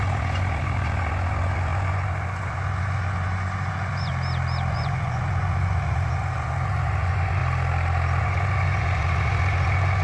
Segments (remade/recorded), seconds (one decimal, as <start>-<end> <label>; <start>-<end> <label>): 0.0-4.1 remade; 4.1-4.7 recorded; 4.7-7.4 remade; 7.4-8.2 recorded; 8.2-10.0 remade